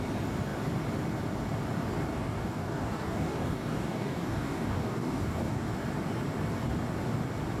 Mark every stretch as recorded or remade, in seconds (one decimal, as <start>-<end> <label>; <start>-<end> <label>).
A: 0.0-2.1 recorded; 2.1-5.7 remade; 5.7-7.6 recorded